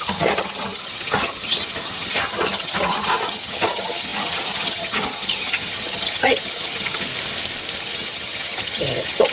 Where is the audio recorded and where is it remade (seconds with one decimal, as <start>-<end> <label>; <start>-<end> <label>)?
0.0-7.1 remade; 7.1-7.8 recorded; 7.8-9.3 remade